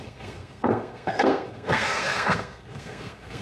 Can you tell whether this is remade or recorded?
remade